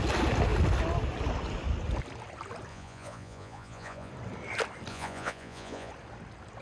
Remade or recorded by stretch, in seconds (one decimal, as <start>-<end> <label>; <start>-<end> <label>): 0.0-2.7 recorded; 2.7-4.1 remade; 4.1-4.9 recorded; 4.9-5.9 remade; 5.9-6.6 recorded